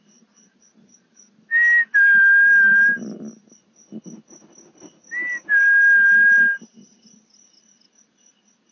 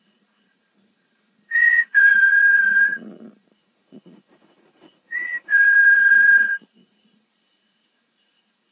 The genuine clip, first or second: first